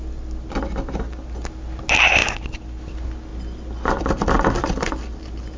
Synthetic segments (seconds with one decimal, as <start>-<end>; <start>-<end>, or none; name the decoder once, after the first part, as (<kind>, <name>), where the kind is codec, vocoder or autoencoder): none